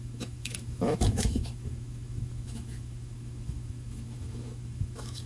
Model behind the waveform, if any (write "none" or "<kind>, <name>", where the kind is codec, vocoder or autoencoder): autoencoder, DAC-VAE